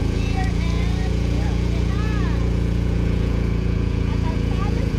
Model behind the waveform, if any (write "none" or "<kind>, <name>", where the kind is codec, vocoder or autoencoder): vocoder, Vocos